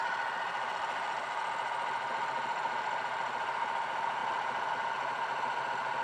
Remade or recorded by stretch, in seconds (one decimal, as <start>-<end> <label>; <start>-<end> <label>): 0.0-6.0 recorded